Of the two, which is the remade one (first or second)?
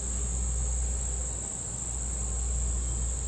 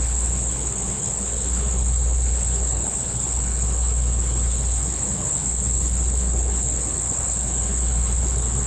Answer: second